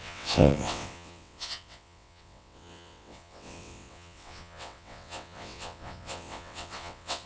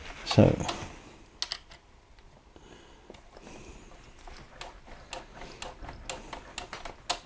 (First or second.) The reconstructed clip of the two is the first